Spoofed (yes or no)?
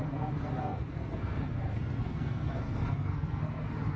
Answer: yes